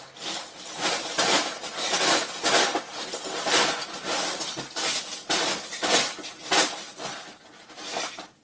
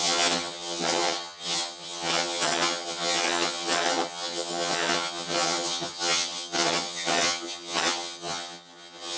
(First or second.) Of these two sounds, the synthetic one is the second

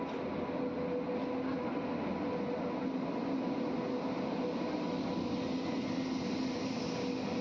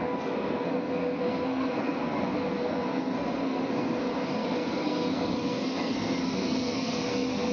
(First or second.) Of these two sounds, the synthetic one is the second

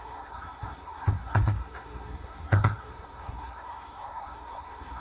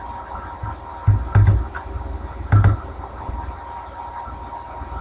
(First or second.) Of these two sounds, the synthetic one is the first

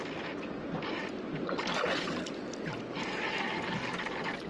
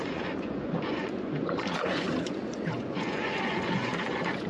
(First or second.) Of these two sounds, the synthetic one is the second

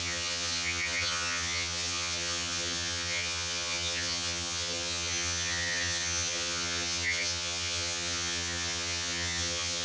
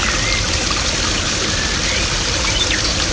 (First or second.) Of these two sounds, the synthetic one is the first